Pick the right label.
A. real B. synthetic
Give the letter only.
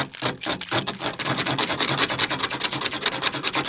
A